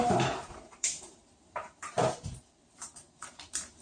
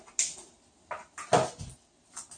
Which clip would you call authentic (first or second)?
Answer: second